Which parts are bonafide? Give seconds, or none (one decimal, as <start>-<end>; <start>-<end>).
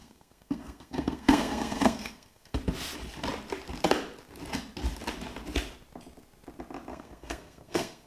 2.6-6.9